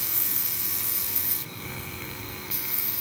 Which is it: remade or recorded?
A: remade